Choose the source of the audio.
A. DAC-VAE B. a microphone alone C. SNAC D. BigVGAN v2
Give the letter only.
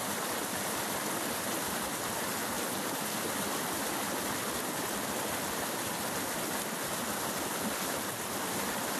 B